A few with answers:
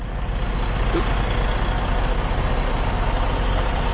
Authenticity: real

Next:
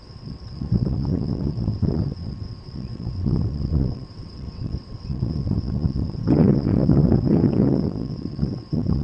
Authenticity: fake